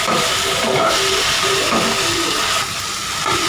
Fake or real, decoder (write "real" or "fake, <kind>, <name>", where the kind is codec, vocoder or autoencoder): real